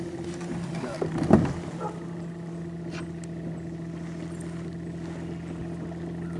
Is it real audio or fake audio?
real